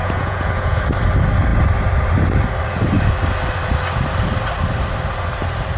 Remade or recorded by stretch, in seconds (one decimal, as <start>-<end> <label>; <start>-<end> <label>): 0.0-0.8 remade; 0.8-5.8 recorded